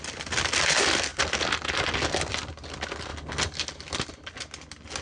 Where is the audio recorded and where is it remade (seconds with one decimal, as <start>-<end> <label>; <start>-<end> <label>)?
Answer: 0.0-5.0 recorded

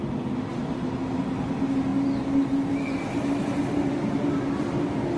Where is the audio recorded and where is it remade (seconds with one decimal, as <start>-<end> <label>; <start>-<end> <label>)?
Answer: 0.0-5.2 recorded

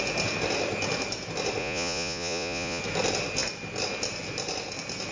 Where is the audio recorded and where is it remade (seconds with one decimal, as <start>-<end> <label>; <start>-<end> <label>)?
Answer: 0.0-1.6 recorded; 1.6-2.8 remade; 2.8-5.1 recorded

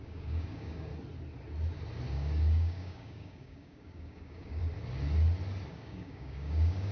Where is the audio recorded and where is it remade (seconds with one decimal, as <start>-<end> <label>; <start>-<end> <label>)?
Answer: 0.0-0.9 remade; 0.9-2.1 recorded; 2.1-4.6 remade; 4.6-5.7 recorded; 5.7-6.9 remade